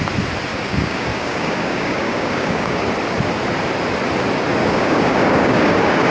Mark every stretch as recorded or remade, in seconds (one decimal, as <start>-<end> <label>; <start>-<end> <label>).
0.0-0.5 recorded; 0.5-2.9 remade; 2.9-4.6 recorded; 4.6-6.1 remade